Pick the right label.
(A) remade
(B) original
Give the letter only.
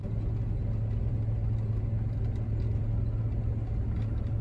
B